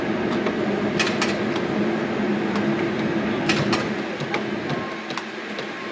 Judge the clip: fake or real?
real